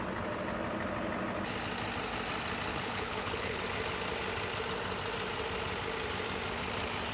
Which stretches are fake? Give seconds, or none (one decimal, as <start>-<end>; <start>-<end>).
2.7-3.6